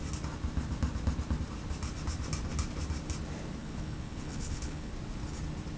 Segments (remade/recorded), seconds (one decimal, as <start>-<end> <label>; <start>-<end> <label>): 0.0-3.6 recorded; 3.6-4.9 remade; 4.9-5.8 recorded